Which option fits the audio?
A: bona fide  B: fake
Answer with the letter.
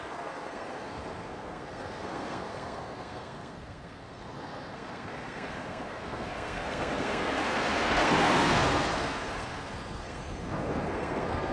B